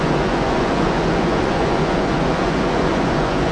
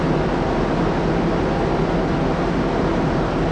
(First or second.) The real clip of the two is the second